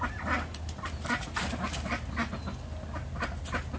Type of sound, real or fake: real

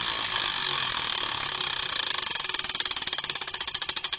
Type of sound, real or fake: real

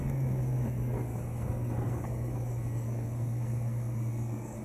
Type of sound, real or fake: fake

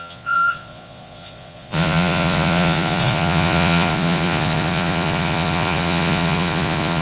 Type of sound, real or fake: fake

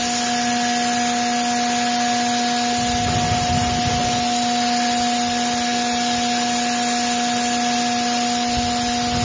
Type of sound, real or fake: real